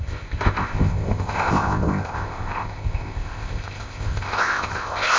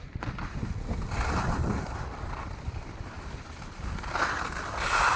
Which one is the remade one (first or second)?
first